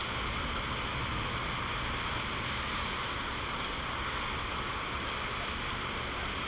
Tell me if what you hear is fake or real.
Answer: real